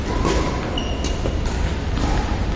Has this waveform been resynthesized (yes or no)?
no